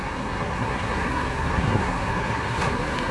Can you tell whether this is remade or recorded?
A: remade